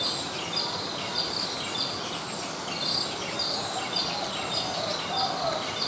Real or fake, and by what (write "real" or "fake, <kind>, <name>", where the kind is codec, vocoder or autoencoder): real